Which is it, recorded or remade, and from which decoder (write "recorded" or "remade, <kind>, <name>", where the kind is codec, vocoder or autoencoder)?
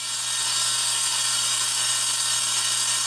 recorded